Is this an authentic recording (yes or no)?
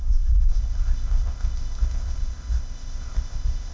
no